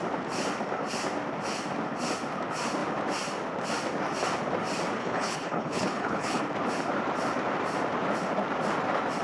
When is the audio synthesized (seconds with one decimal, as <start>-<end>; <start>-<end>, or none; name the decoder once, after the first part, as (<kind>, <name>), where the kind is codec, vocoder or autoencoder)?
5.0-6.4 (codec, HILCodec)